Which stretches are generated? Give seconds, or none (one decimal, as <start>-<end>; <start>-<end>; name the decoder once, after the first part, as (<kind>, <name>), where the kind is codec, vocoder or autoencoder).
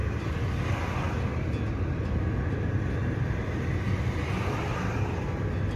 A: none